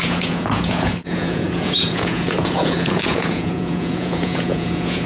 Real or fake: fake